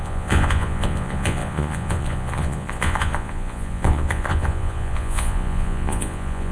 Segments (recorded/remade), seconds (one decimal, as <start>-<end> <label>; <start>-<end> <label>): 0.0-6.5 remade